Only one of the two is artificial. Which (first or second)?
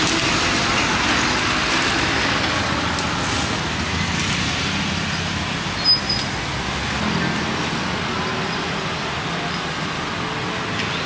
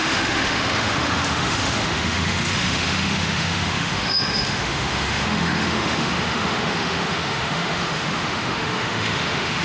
second